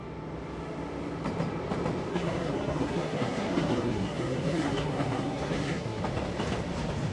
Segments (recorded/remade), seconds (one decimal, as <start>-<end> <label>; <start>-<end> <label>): 0.0-2.1 recorded; 2.1-6.0 remade; 6.0-7.1 recorded